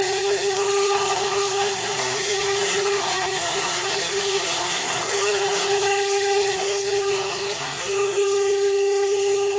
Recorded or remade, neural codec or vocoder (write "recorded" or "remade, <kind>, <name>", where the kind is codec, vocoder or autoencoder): remade, codec, SNAC